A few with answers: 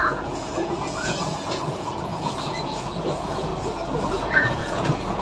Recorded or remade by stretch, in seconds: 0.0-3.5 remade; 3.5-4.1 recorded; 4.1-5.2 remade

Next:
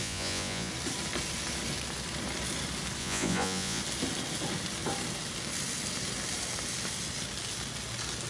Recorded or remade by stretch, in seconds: 0.0-0.7 remade; 0.7-3.0 recorded; 3.0-3.8 remade; 3.8-8.3 recorded

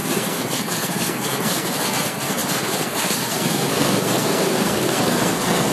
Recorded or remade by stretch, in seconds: 0.0-5.7 remade

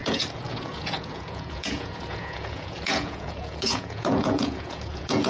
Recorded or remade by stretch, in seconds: 0.0-5.3 remade

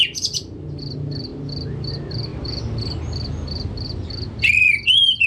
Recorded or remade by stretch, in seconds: 0.0-5.3 recorded